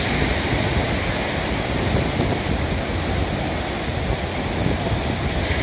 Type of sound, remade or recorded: recorded